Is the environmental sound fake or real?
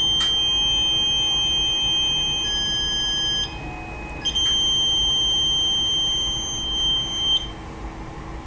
real